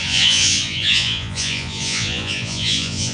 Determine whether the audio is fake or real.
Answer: fake